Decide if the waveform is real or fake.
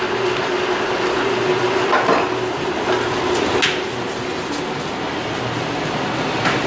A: real